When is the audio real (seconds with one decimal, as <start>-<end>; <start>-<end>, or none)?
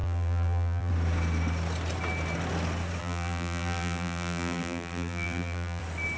0.9-3.0; 5.8-6.2